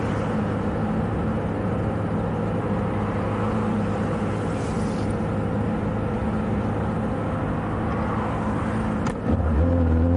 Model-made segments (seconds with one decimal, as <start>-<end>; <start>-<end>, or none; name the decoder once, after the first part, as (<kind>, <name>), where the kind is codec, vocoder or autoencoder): none